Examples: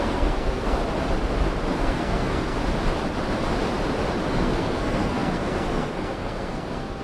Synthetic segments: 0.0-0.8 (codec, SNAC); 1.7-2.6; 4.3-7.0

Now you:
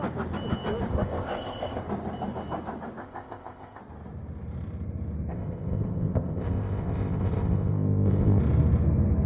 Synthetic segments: 0.9-1.8 (codec, ZipCodec); 3.0-3.8; 5.3-8.4

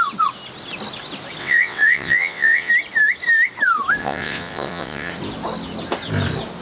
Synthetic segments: 1.4-2.7 (vocoder, WaveNeXt); 4.0-5.1

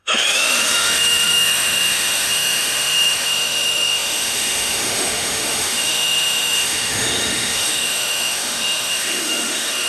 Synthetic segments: 0.0-9.9 (autoencoder, DAC-VAE)

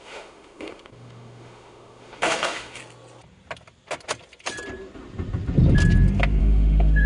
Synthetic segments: 0.0-2.8 (autoencoder, DAC-VAE); 6.4-7.1

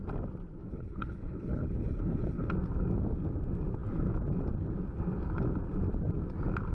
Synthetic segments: 0.7-2.5 (codec, HILCodec)

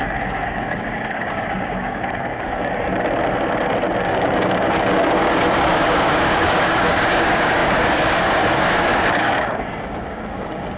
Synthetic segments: 0.0-2.9 (codec, DAC); 4.0-10.8

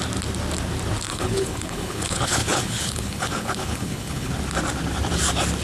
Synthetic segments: 1.1-4.3 (codec, HILCodec)